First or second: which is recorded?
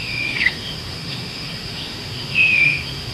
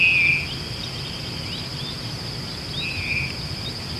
second